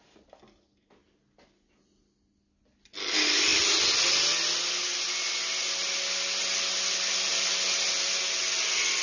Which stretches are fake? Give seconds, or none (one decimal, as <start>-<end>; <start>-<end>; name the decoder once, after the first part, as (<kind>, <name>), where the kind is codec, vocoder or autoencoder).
none